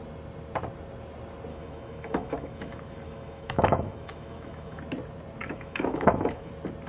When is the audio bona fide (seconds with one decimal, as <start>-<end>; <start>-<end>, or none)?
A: 0.0-1.5; 4.8-5.4; 6.5-6.9